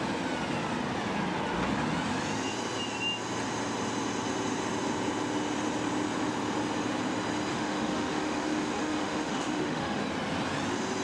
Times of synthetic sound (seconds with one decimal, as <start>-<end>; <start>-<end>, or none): 7.5-10.0